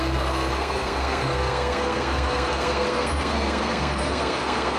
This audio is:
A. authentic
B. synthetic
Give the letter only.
B